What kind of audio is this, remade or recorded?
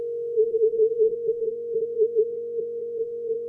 remade